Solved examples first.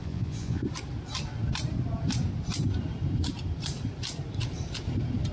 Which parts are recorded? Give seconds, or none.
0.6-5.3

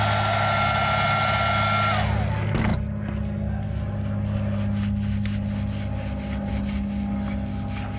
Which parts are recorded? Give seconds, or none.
0.0-8.0

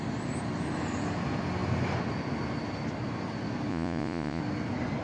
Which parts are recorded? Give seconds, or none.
0.0-3.7; 4.4-5.0

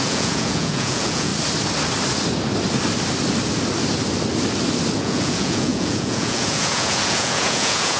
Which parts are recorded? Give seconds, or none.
1.3-5.0

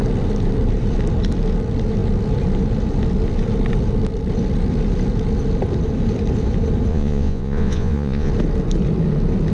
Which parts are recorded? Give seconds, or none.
0.0-6.9; 8.3-9.5

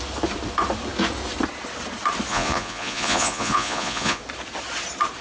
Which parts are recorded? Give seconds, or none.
0.0-2.3; 4.2-5.2